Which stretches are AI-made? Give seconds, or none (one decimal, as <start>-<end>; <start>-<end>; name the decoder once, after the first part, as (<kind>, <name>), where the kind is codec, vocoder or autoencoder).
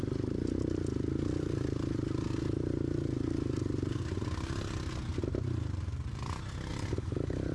none